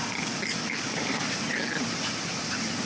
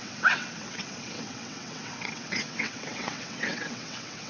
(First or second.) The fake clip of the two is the second